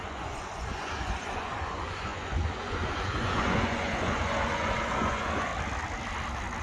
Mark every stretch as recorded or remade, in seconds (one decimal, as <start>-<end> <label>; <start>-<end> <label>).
0.0-5.5 remade; 5.5-6.6 recorded